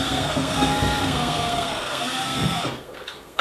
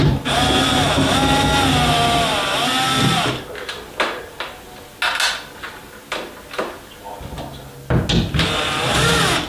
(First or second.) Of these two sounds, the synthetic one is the first